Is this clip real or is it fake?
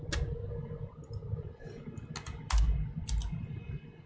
real